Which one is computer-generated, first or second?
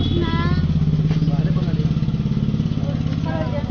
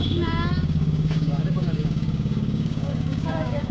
second